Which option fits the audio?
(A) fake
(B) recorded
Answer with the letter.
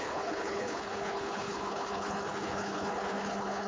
A